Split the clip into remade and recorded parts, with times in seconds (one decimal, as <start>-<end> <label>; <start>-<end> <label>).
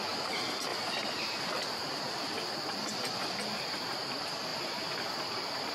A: 0.0-0.7 recorded; 0.7-2.0 remade; 2.0-5.7 recorded